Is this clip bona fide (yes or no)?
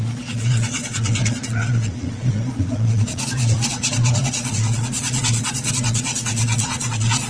no